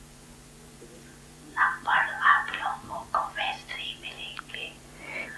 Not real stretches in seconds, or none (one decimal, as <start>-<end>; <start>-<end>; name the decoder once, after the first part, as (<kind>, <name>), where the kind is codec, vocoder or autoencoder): 0.0-1.7 (vocoder, Vocos); 2.6-5.4